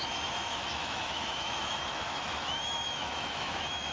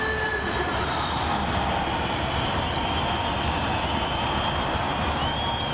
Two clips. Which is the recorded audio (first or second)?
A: second